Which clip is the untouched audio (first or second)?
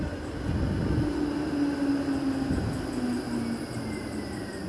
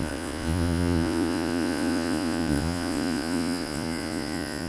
first